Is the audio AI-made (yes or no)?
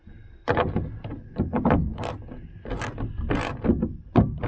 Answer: no